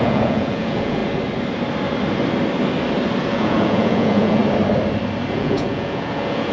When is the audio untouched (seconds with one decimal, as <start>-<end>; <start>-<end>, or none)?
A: 1.0-3.3; 4.4-5.3